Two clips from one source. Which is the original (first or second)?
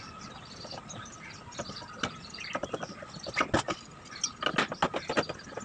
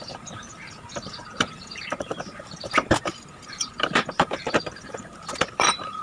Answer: first